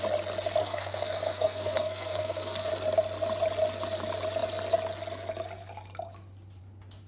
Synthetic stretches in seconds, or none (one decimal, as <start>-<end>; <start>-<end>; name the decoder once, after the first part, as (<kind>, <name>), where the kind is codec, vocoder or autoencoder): 0.6-2.7 (codec, SNAC)